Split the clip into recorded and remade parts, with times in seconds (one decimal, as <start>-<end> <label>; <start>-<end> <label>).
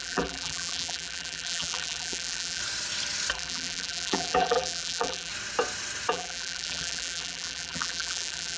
0.0-2.6 remade; 2.6-3.3 recorded; 3.3-5.3 remade; 5.3-6.1 recorded; 6.1-8.6 remade